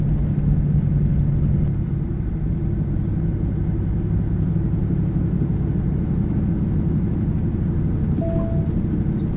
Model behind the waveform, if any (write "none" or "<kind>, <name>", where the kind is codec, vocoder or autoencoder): none